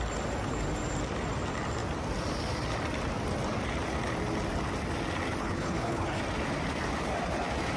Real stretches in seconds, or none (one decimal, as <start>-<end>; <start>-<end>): 0.0-5.4; 6.2-7.8

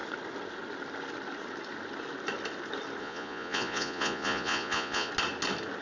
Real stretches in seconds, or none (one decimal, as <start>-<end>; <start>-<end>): 0.0-3.0; 5.1-5.8

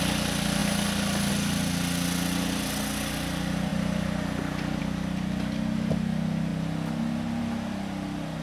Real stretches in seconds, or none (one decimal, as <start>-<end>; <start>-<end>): 0.0-8.4